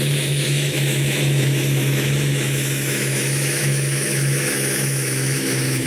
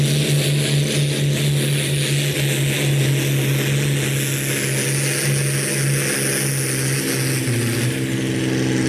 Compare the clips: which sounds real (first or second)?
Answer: second